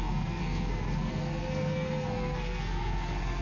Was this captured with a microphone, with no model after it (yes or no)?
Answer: no